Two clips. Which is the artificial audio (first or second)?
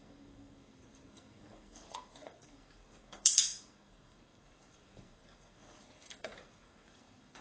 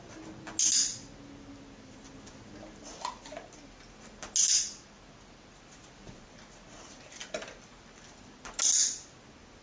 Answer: first